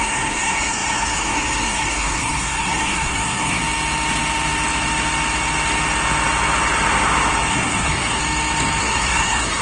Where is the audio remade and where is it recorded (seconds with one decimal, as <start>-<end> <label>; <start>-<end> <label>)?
0.0-3.6 remade; 3.6-7.5 recorded; 7.5-8.2 remade; 8.2-8.8 recorded; 8.8-9.6 remade